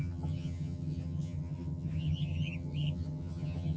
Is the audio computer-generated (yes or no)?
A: yes